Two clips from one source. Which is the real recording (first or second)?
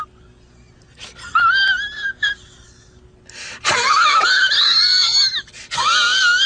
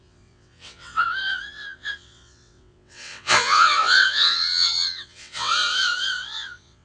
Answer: first